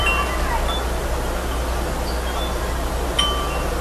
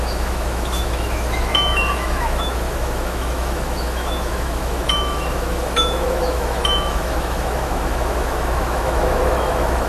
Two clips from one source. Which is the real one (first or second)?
first